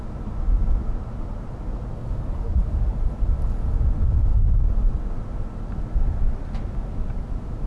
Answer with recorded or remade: recorded